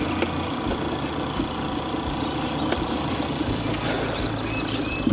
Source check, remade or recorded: recorded